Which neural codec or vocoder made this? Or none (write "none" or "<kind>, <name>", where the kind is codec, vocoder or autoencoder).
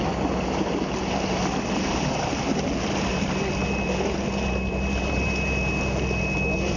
none